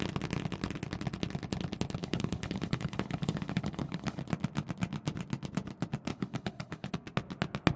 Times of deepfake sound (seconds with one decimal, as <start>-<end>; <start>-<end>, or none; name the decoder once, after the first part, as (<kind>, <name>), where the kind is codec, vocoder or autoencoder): 2.0-4.2 (codec, HILCodec); 6.1-6.9